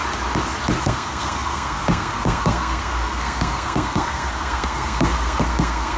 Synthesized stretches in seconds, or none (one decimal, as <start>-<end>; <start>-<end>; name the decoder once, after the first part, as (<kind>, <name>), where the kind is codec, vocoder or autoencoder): 0.8-6.0 (codec, SNAC)